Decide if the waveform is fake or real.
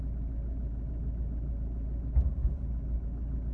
real